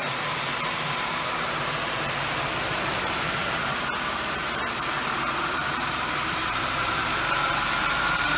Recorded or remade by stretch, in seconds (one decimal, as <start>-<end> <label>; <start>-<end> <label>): 0.0-8.4 remade